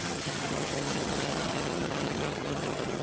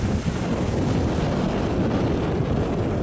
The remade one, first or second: first